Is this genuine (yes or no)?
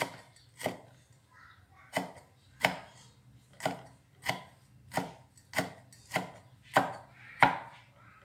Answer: yes